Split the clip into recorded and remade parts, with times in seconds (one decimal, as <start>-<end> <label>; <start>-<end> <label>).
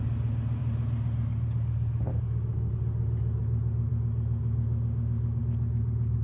0.0-2.1 recorded; 2.1-2.7 remade; 2.7-4.4 recorded; 4.4-5.4 remade; 5.4-6.2 recorded